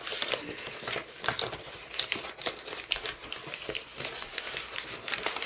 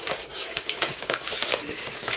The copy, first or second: second